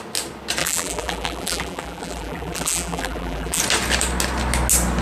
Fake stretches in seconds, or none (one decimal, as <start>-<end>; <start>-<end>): 0.6-3.6